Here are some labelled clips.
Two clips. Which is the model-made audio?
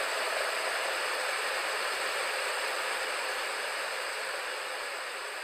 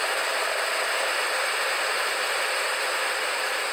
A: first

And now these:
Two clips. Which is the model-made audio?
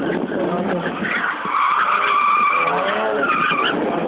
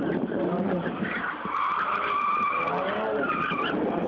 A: second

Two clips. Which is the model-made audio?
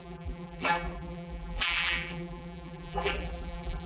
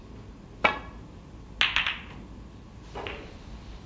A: first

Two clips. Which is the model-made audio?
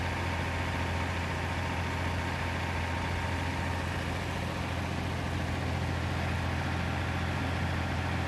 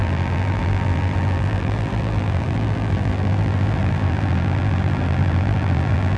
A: second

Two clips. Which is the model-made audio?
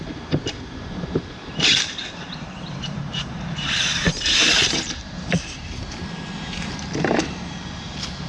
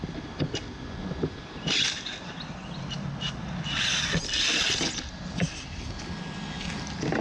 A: first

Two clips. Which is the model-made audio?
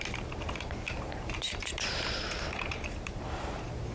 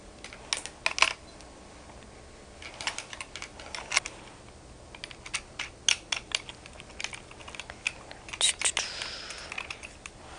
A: first